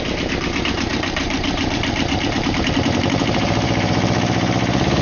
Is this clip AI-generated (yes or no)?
yes